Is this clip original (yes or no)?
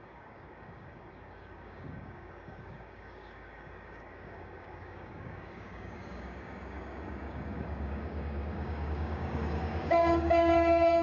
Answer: no